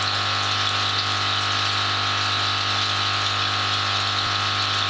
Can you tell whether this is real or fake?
real